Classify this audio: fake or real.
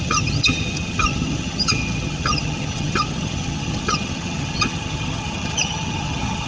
fake